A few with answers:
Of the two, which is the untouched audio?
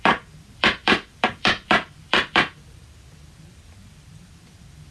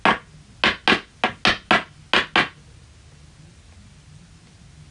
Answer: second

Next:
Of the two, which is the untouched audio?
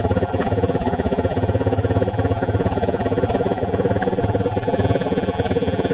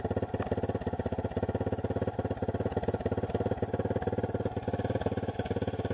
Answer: second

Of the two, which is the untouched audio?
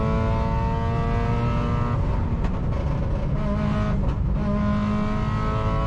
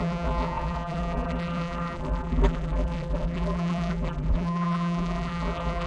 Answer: first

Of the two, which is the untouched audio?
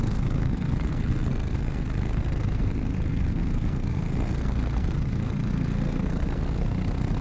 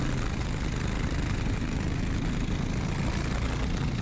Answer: second